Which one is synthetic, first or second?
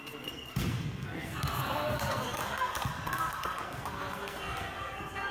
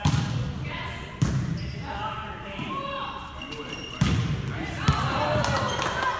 first